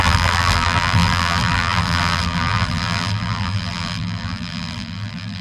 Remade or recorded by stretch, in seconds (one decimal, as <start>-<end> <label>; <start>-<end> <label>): 0.0-5.4 remade